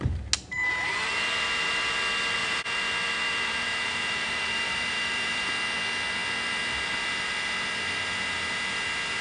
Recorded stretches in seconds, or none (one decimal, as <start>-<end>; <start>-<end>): 0.0-2.4; 5.5-9.2

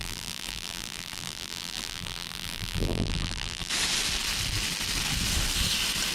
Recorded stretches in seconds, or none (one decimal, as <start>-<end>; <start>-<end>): 3.7-6.1

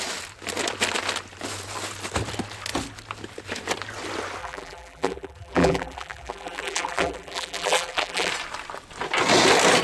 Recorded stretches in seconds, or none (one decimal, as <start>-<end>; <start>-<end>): 0.0-4.4; 8.3-9.8

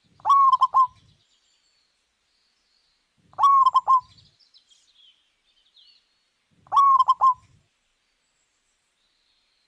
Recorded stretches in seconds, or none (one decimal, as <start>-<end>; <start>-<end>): 0.0-9.7

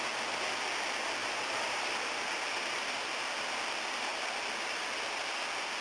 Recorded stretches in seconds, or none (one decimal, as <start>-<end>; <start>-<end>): 0.0-1.2; 2.0-5.8

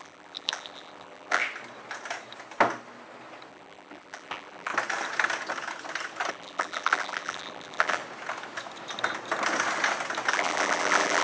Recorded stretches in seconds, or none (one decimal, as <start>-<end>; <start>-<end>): 1.4-3.5; 4.7-6.3; 8.0-10.3